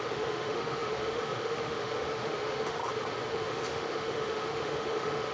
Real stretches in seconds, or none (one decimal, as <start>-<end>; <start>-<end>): 2.8-3.3